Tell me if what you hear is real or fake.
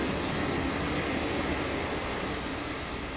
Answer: real